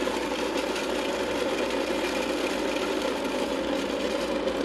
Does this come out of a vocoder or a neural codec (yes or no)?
no